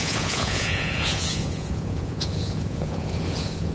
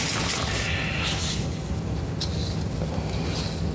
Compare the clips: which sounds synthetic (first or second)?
first